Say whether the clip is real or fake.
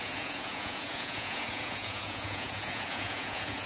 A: fake